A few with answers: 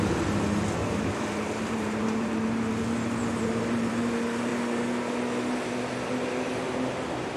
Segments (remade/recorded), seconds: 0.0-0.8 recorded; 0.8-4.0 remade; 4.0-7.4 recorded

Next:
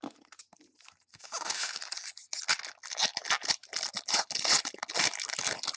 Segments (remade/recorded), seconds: 0.0-1.1 recorded; 1.1-1.8 remade; 1.8-5.8 recorded

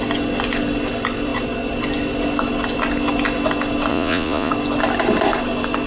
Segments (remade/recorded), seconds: 0.0-3.9 recorded; 3.9-4.5 remade; 4.5-5.9 recorded

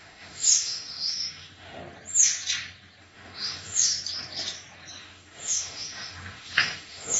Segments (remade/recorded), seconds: 0.0-1.8 remade; 1.8-3.0 recorded; 3.0-3.9 remade; 3.9-5.0 recorded; 5.0-7.2 remade

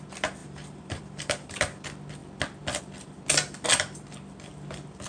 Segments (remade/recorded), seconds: 0.0-0.4 recorded; 0.4-1.0 remade; 1.0-5.1 recorded

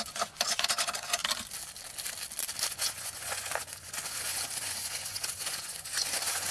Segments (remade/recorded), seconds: 0.0-1.2 remade; 1.2-2.7 recorded; 2.7-6.5 remade

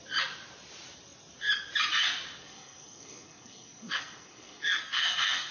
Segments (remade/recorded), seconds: 0.0-2.4 recorded; 2.4-5.5 remade

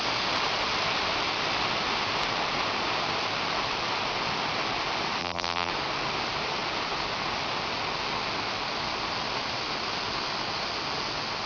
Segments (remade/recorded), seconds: 0.0-5.2 recorded; 5.2-5.7 remade; 5.7-11.5 recorded